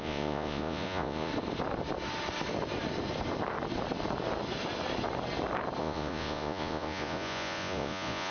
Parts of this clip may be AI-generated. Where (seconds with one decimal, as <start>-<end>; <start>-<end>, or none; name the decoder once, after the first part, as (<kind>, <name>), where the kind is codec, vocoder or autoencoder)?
0.0-1.3 (vocoder, Vocos); 5.8-8.3

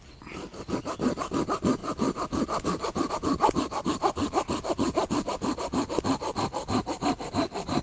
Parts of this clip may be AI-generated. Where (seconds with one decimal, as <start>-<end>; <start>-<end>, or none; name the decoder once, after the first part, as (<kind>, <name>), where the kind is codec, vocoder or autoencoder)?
none

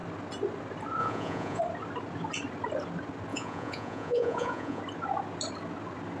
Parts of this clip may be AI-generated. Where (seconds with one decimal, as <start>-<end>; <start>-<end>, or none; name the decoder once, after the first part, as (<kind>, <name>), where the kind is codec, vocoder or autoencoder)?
1.0-1.6 (vocoder, Vocos); 3.3-4.8

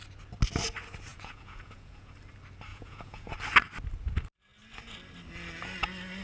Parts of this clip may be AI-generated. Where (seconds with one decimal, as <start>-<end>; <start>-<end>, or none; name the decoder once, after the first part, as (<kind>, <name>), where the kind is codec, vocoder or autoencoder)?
1.1-2.1 (vocoder, Vocos); 2.7-3.3

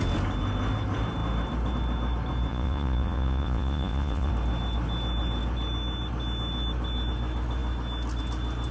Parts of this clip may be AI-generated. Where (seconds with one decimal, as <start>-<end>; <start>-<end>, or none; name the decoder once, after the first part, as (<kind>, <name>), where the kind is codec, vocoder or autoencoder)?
2.5-4.3 (vocoder, Vocos)

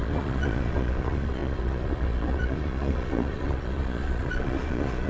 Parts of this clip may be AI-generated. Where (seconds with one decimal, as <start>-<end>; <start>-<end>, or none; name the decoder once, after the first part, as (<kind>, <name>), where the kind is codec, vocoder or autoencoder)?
0.0-5.1 (vocoder, Vocos)

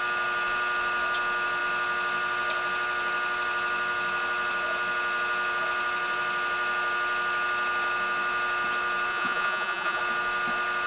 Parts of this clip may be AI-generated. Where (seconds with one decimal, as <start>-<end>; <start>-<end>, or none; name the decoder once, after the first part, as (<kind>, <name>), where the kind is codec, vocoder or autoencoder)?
9.1-10.0 (vocoder, Vocos)

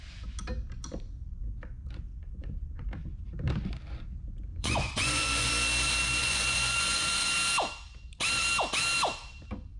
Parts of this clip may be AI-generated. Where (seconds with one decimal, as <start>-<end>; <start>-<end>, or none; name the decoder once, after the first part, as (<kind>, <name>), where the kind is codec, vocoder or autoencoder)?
2.1-2.9 (vocoder, Vocos); 4.5-5.5; 6.2-7.3